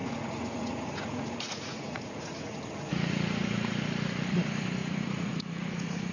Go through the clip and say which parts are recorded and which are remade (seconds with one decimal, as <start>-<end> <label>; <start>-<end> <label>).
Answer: 0.0-3.7 remade; 3.7-4.8 recorded; 4.8-6.1 remade